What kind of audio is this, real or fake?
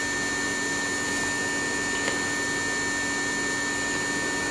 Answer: real